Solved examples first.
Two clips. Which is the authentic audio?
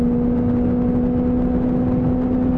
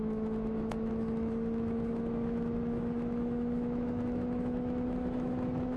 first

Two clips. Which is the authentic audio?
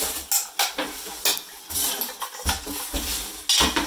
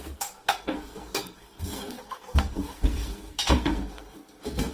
first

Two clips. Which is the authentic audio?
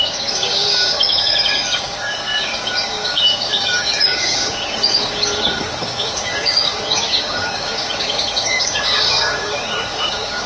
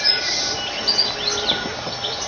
second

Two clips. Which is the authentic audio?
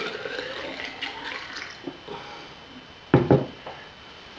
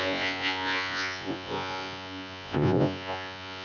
first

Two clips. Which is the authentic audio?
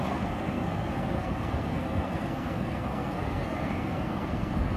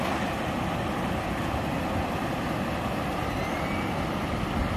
second